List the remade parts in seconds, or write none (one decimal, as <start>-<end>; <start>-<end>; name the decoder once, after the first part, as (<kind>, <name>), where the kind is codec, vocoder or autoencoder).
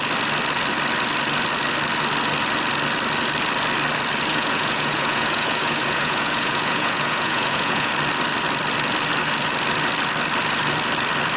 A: 4.3-7.9 (vocoder, Vocos)